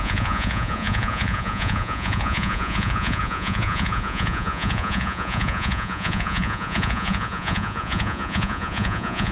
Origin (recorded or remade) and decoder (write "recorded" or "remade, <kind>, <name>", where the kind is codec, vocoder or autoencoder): remade, vocoder, Vocos